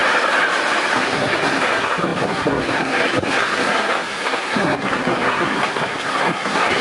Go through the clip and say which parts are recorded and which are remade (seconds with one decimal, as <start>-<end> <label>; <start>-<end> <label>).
0.0-0.9 recorded; 0.9-6.8 remade